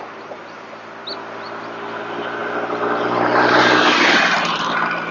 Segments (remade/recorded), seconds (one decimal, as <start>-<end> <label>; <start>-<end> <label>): 0.0-5.1 recorded